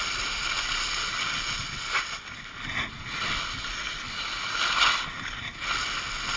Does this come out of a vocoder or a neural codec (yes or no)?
no